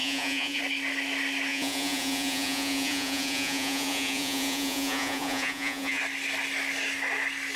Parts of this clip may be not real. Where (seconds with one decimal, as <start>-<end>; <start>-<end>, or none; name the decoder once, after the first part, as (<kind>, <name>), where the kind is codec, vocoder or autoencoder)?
0.0-0.6 (vocoder, Vocos); 1.5-6.0